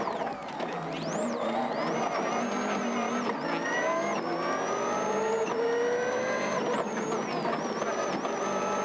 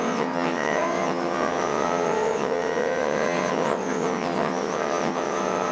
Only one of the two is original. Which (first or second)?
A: first